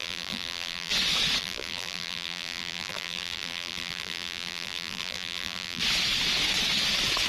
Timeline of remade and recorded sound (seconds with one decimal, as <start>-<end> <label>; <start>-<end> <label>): 0.0-0.9 remade; 0.9-1.4 recorded; 1.4-5.8 remade; 5.8-7.3 recorded